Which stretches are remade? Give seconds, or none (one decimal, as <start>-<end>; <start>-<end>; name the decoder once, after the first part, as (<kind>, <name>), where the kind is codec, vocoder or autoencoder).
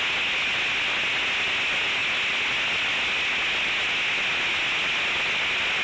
none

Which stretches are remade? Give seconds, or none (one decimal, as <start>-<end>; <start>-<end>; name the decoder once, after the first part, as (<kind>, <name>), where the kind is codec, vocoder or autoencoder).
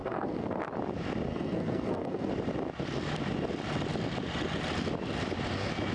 0.0-0.6 (codec, SNAC); 1.3-2.3